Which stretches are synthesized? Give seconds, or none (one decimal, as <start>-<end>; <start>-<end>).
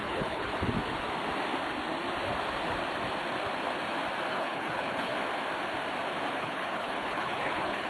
0.0-0.5; 4.3-5.1; 6.4-7.9